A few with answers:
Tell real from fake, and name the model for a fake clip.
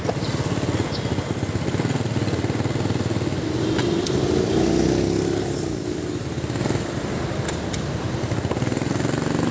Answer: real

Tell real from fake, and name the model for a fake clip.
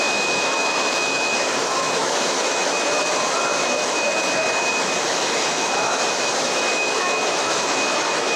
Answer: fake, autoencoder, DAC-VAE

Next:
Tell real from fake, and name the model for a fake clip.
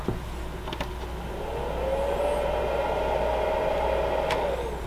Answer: real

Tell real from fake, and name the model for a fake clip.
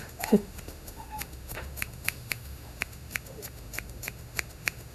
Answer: fake, autoencoder, DAC-VAE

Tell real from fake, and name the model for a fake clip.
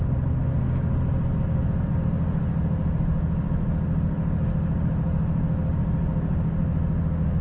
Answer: real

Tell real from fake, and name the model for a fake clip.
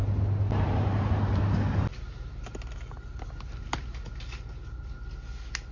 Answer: real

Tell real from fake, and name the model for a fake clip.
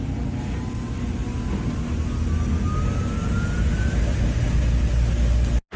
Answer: real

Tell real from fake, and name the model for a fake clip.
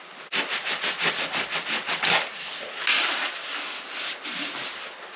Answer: real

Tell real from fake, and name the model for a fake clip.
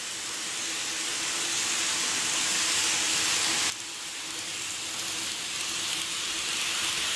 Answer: real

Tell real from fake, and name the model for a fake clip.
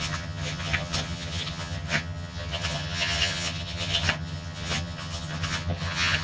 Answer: fake, vocoder, HiFi-GAN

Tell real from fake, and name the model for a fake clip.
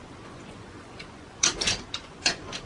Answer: fake, vocoder, Vocos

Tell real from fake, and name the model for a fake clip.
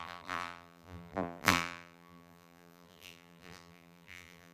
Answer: fake, vocoder, BigVGAN v2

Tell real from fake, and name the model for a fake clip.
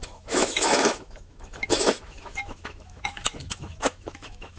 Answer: fake, autoencoder, DAC-VAE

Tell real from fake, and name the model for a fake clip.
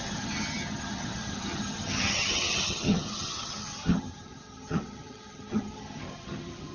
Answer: fake, vocoder, HiFi-GAN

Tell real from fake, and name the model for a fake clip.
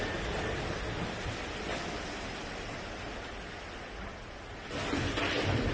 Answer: real